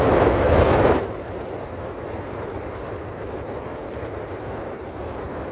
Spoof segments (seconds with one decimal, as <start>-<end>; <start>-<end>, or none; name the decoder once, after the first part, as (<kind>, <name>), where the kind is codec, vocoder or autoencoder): 0.0-3.7 (vocoder, BigVGAN v2); 4.7-5.5